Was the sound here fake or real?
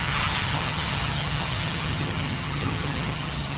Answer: fake